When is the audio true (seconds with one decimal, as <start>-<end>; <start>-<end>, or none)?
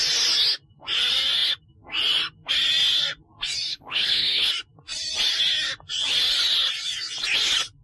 0.0-3.7; 4.5-7.8